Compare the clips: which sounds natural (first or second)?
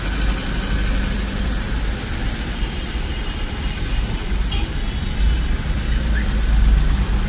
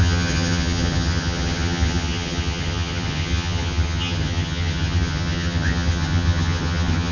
first